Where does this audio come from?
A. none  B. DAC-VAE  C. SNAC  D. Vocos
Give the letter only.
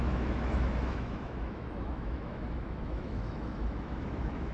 B